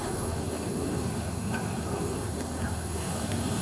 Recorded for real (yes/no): no